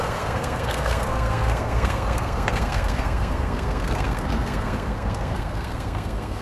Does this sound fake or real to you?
fake